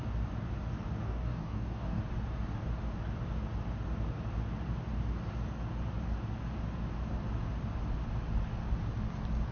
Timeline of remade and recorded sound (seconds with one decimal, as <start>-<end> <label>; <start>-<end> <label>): 0.0-1.0 recorded; 1.0-2.0 remade; 2.0-9.5 recorded